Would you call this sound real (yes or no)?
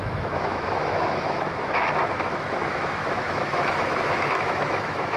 no